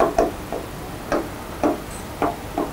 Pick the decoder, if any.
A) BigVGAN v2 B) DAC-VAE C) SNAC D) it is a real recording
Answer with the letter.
D